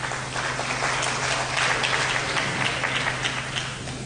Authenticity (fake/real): real